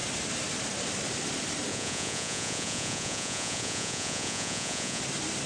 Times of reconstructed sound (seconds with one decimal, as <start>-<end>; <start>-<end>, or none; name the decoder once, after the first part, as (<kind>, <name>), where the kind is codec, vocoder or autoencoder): 1.7-5.0 (vocoder, Vocos)